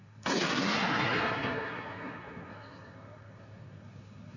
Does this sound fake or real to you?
fake